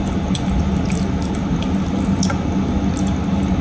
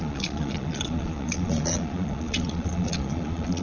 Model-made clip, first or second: second